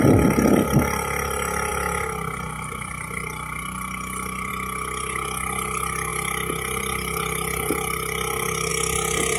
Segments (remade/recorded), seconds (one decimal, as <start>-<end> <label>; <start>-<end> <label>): 0.0-9.4 recorded